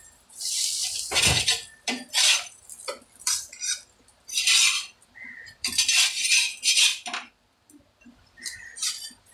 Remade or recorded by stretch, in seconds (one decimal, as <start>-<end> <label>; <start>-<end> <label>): 0.0-6.9 remade; 6.9-8.1 recorded; 8.1-9.3 remade